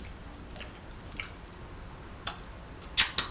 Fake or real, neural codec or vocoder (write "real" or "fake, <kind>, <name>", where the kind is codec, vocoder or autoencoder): real